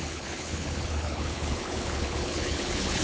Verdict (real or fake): fake